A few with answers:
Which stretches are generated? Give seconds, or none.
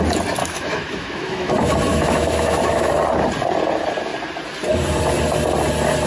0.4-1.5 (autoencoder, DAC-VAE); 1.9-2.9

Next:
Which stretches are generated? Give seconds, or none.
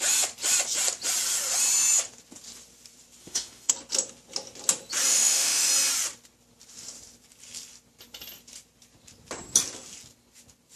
3.2-3.7 (autoencoder, DAC-VAE); 5.1-5.7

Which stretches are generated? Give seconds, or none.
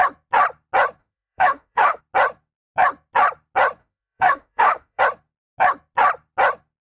1.0-2.0 (autoencoder, DAC-VAE); 3.8-5.0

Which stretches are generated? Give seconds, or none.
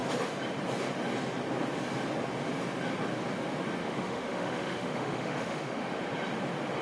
3.8-6.0 (autoencoder, DAC-VAE)